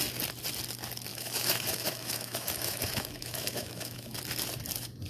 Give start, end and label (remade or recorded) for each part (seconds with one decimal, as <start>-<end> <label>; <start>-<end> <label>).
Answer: 0.0-1.1 recorded; 1.1-4.2 remade; 4.2-5.1 recorded